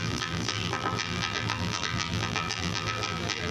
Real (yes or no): no